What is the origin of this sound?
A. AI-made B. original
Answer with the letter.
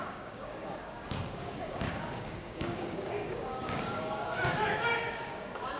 A